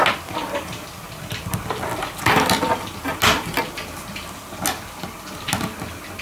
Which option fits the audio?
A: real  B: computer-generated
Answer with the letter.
A